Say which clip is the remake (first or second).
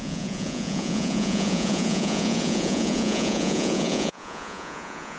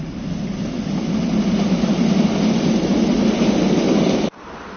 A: first